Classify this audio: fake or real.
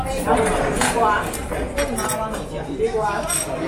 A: real